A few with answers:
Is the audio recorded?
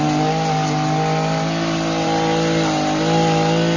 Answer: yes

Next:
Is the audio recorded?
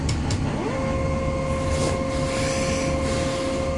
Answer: yes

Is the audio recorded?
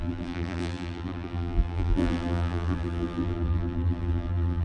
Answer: no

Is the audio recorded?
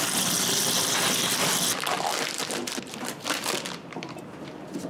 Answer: no